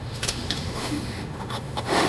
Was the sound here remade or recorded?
remade